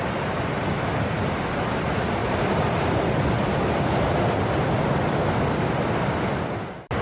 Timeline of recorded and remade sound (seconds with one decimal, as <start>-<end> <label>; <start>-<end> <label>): 0.0-7.0 recorded